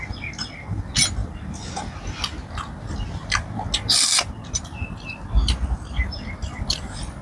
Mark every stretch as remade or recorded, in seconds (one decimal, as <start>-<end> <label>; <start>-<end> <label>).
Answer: 0.0-7.2 recorded